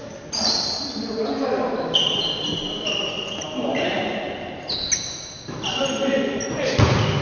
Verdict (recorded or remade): recorded